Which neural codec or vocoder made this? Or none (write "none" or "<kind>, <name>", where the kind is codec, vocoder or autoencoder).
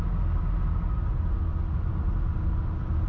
none